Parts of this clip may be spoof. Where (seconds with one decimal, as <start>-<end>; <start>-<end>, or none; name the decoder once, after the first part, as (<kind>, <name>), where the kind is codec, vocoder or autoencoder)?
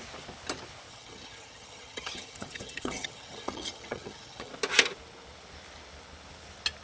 0.9-4.5 (vocoder, HiFi-GAN)